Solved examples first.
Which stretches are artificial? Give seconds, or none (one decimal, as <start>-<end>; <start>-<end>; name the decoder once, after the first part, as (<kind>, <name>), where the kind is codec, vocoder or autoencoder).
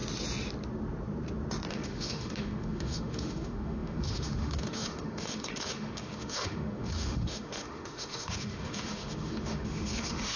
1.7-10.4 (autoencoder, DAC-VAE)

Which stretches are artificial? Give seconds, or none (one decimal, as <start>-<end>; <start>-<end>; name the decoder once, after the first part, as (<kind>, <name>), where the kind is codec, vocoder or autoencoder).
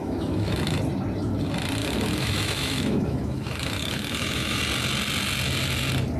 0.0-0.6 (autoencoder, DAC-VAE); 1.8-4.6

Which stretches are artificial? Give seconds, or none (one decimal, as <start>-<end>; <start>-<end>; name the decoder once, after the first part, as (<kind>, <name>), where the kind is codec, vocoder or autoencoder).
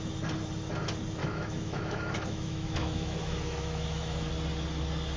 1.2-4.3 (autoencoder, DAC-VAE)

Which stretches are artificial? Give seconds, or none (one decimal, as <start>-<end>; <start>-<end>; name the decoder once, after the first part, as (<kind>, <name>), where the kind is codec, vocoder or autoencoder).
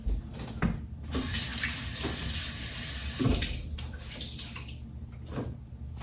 none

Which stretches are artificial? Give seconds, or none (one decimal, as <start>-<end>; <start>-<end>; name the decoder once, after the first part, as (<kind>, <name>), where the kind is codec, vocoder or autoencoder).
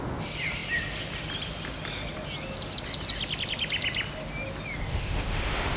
4.9-5.8 (autoencoder, DAC-VAE)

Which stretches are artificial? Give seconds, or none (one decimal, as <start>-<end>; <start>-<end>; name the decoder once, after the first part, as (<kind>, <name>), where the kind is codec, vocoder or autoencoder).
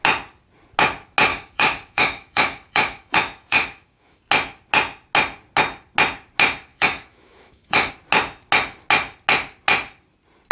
1.3-4.2 (autoencoder, DAC-VAE); 6.7-7.9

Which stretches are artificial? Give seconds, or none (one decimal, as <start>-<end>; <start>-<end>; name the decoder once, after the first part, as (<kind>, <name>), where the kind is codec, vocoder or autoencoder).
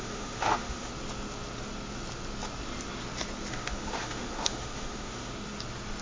0.0-0.9 (autoencoder, DAC-VAE); 3.5-5.3